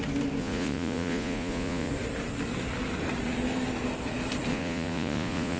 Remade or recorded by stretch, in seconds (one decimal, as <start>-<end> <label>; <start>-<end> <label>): 0.0-0.4 recorded; 0.4-1.9 remade; 1.9-4.5 recorded; 4.5-5.6 remade